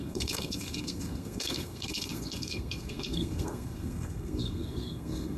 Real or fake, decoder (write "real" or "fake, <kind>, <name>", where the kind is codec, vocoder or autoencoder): fake, codec, SNAC